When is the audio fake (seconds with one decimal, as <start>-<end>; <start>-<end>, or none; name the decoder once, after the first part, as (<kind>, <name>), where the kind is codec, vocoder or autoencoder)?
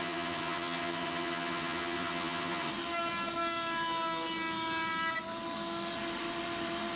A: 0.0-2.7 (vocoder, HiFi-GAN)